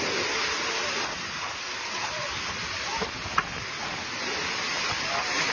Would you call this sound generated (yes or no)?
no